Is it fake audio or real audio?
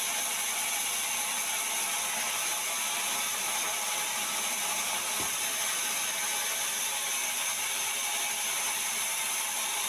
real